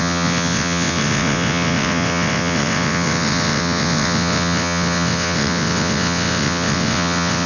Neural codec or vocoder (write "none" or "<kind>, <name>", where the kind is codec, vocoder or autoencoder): vocoder, WaveNeXt